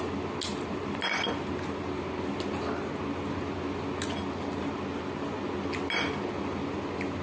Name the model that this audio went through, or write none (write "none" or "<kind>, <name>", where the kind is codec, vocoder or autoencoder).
none